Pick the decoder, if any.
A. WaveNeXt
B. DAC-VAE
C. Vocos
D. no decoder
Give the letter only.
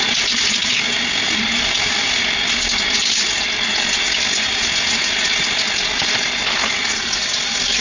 D